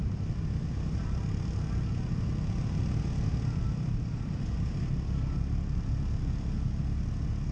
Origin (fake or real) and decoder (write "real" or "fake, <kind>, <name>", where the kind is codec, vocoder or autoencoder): real